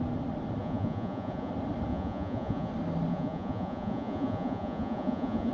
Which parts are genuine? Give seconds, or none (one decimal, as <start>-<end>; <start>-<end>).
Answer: 0.0-0.6; 1.5-1.9; 2.7-3.1